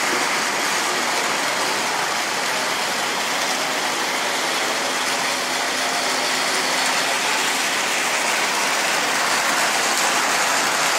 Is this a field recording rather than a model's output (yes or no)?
yes